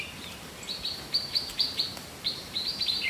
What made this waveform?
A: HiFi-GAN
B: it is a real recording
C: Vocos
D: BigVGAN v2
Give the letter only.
D